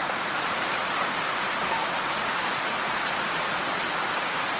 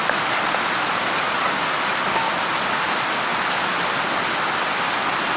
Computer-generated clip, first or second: first